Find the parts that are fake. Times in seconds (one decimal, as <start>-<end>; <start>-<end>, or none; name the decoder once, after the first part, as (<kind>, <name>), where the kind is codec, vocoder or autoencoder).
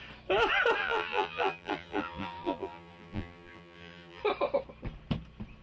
0.8-4.2 (vocoder, BigVGAN v2)